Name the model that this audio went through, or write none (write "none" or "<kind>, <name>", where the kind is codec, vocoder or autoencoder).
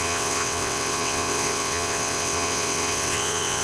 vocoder, WaveNeXt